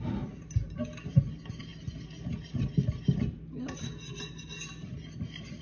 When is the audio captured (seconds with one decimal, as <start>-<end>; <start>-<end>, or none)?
0.0-5.6